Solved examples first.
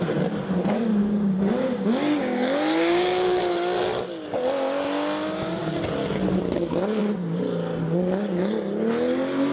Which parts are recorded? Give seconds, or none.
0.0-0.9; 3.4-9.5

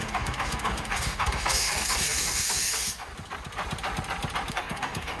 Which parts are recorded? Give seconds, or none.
3.1-4.5